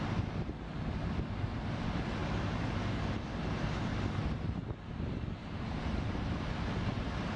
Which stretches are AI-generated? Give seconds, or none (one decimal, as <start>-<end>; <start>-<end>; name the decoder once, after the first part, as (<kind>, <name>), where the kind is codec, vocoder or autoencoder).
2.2-2.7 (vocoder, BigVGAN v2); 5.4-6.5